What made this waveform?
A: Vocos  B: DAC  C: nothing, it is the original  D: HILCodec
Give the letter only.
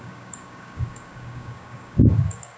B